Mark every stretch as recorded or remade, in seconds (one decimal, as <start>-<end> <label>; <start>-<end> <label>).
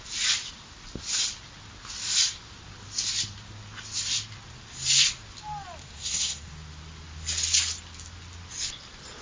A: 0.0-5.8 recorded; 5.8-6.5 remade; 6.5-9.2 recorded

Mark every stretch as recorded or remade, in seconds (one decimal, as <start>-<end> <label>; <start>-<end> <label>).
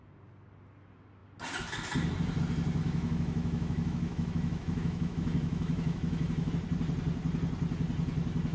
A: 0.0-2.8 recorded; 2.8-6.5 remade; 6.5-8.5 recorded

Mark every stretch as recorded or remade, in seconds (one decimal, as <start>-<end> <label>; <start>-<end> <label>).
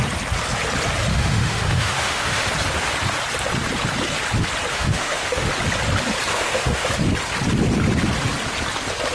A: 0.0-1.1 recorded; 1.1-2.5 remade; 2.5-4.7 recorded; 4.7-5.5 remade; 5.5-6.3 recorded; 6.3-6.9 remade; 6.9-9.1 recorded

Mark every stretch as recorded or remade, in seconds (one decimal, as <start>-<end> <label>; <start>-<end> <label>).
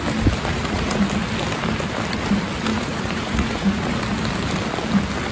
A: 0.0-0.5 recorded; 0.5-1.0 remade; 1.0-2.7 recorded; 2.7-4.0 remade; 4.0-5.3 recorded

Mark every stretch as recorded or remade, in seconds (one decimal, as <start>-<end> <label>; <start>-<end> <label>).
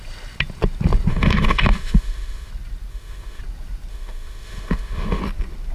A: 0.0-1.1 recorded; 1.1-2.5 remade; 2.5-2.9 recorded; 2.9-3.4 remade; 3.4-3.9 recorded; 3.9-5.2 remade; 5.2-5.7 recorded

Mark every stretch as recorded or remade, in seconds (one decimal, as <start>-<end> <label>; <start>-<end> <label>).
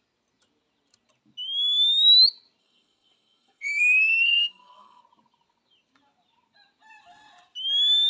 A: 0.0-2.6 recorded; 2.6-5.0 remade; 5.0-8.1 recorded